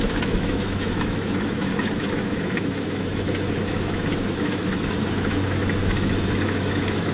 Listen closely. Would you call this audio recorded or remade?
remade